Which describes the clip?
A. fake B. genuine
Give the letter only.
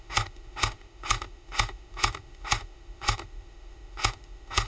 A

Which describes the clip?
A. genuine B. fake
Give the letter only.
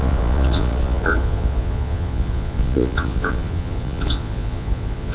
B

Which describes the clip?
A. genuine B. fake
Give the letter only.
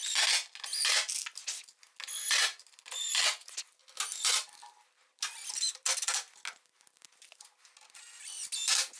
A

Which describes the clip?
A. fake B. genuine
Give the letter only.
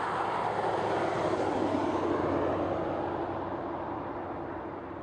B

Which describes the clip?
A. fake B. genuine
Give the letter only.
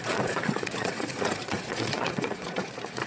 A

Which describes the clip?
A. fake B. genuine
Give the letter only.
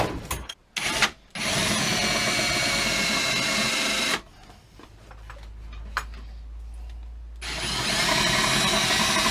B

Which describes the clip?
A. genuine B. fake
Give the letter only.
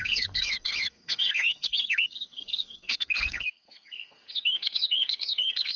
B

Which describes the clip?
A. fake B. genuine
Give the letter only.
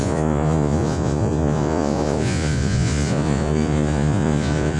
A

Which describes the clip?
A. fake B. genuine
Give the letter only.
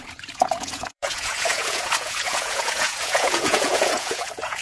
A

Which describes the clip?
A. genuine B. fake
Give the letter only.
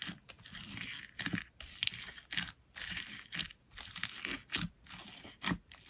A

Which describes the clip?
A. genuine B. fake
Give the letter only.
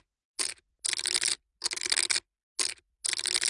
A